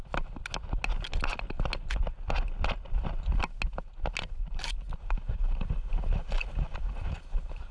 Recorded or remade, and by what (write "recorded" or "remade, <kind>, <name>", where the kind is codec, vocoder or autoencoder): recorded